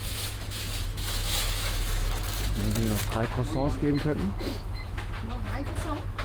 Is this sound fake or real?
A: fake